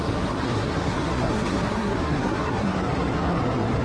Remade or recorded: remade